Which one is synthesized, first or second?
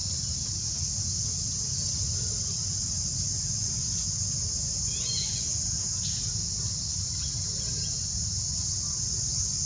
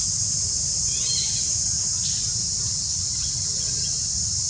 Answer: second